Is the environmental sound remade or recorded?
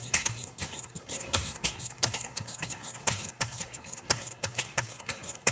remade